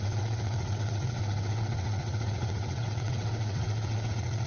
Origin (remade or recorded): remade